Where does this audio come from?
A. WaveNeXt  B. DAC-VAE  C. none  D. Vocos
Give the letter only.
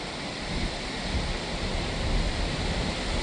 C